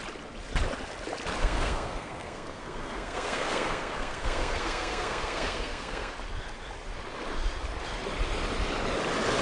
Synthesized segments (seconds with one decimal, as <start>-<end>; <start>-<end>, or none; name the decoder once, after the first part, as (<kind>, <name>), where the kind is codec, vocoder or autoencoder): 1.4-6.1 (codec, SNAC)